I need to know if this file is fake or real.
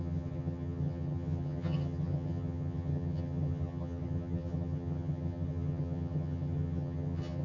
fake